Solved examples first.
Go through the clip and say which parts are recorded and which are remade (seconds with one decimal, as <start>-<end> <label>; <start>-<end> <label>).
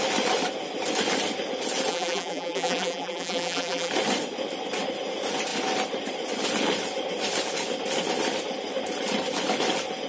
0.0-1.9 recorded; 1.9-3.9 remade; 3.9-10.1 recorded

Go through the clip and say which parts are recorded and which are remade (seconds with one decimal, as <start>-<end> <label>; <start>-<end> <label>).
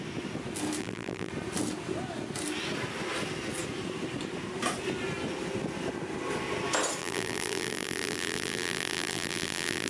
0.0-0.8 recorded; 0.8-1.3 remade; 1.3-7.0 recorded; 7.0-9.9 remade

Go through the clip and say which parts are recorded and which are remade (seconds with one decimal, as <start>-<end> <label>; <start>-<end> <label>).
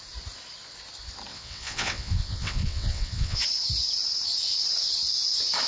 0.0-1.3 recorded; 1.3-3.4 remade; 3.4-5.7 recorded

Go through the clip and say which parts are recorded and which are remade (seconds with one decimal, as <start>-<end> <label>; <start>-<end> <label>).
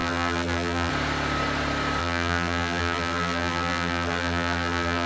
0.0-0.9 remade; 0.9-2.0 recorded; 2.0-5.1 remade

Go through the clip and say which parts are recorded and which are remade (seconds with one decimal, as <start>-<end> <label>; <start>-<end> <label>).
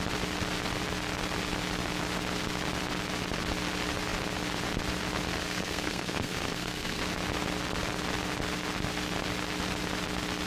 0.0-5.4 recorded; 5.4-7.0 remade; 7.0-10.5 recorded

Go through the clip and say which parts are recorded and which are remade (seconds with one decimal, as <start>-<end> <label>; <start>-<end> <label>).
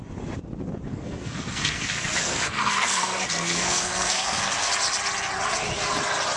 0.0-0.9 recorded; 0.9-4.7 remade; 4.7-6.4 recorded